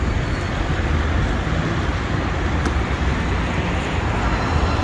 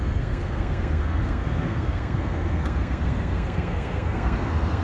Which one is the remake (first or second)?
second